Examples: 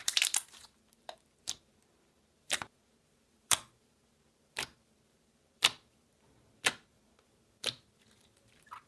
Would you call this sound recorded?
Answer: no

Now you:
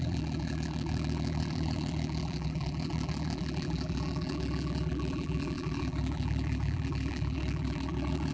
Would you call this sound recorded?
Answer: no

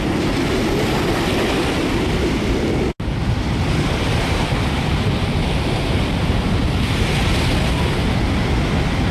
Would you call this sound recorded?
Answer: yes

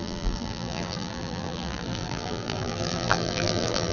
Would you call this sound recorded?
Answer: no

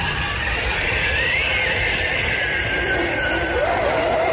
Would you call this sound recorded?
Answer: no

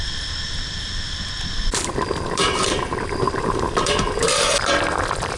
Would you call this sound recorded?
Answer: no